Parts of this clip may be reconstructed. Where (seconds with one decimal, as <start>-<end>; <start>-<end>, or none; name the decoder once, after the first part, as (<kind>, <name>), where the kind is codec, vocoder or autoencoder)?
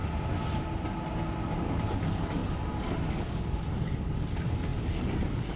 1.6-5.6 (codec, DAC)